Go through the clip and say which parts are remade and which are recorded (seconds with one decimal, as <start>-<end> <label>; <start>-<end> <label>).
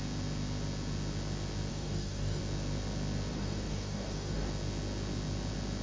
0.0-1.7 recorded; 1.7-2.4 remade; 2.4-3.3 recorded; 3.3-4.5 remade; 4.5-5.8 recorded